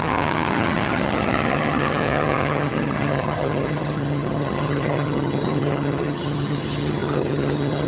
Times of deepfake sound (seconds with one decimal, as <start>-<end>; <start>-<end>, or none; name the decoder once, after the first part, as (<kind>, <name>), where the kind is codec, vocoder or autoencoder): 0.0-7.9 (vocoder, HiFi-GAN)